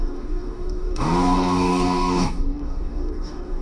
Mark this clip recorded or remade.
remade